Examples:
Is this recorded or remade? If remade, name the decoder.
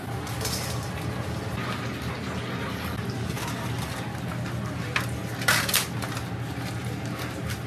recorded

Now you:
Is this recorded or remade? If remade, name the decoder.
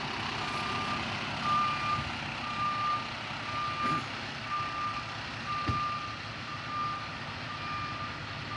recorded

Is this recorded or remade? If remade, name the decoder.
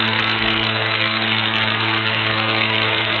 remade, codec, SNAC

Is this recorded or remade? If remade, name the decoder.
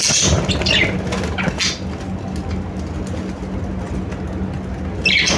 recorded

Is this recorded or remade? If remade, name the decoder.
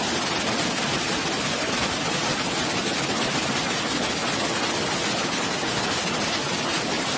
recorded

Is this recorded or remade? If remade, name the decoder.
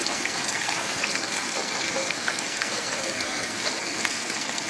remade, codec, SNAC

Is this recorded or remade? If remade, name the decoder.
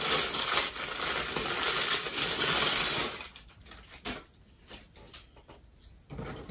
recorded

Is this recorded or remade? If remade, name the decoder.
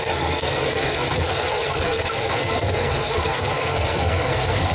remade, codec, SNAC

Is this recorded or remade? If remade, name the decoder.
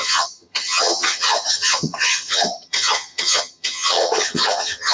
remade, vocoder, HiFi-GAN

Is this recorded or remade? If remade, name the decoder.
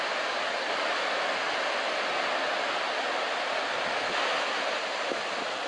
recorded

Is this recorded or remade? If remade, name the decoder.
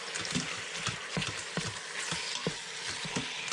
recorded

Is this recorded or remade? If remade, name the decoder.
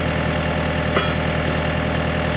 recorded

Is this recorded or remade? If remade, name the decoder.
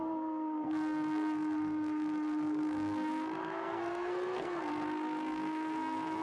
remade, codec, SNAC